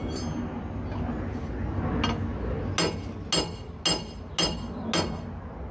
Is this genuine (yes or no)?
yes